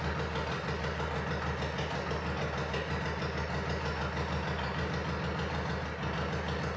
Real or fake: real